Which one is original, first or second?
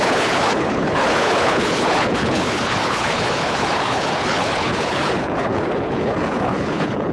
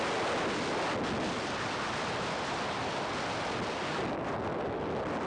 second